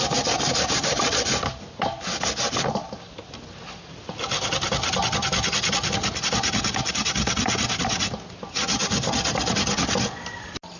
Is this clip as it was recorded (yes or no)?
yes